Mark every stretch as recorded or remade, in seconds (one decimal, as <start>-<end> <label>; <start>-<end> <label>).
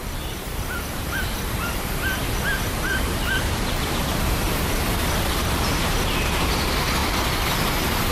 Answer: 0.0-2.2 remade; 2.2-2.9 recorded; 2.9-5.0 remade; 5.0-8.1 recorded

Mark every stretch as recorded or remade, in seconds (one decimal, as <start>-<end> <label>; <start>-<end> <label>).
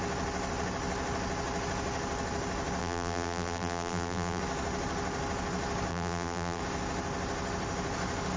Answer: 0.0-2.8 recorded; 2.8-4.4 remade; 4.4-5.9 recorded; 5.9-6.6 remade; 6.6-8.4 recorded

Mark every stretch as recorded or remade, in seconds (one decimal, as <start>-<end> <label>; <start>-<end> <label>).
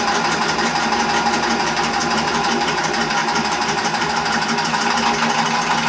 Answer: 0.0-2.0 recorded; 2.0-2.8 remade; 2.8-3.2 recorded; 3.2-4.1 remade; 4.1-5.9 recorded